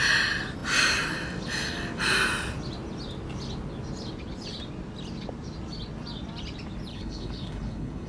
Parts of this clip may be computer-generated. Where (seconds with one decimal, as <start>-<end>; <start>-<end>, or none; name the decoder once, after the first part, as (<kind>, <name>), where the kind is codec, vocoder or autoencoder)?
6.9-8.1 (codec, HILCodec)